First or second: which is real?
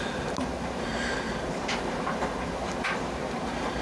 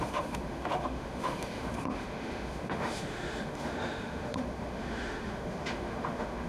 first